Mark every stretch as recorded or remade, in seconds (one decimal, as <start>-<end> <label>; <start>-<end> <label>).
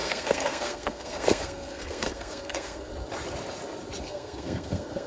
0.0-2.9 remade; 2.9-4.0 recorded; 4.0-5.1 remade